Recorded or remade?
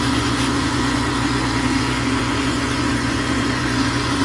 remade